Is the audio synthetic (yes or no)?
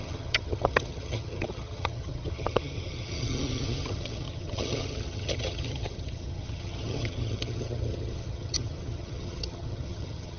yes